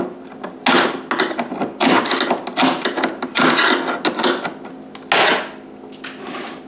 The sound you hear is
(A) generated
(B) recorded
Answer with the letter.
B